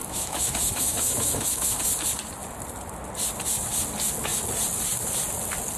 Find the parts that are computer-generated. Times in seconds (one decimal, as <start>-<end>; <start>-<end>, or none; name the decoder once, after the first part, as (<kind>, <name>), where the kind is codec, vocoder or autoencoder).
0.0-1.8 (autoencoder, DAC-VAE)